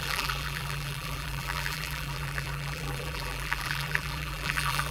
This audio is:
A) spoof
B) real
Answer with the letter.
A